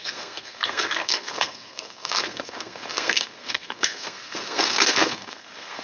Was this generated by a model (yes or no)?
yes